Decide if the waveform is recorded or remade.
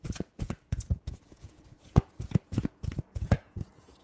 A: remade